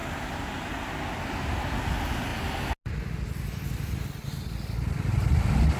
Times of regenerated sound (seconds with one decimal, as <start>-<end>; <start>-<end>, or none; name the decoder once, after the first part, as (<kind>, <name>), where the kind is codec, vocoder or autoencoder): none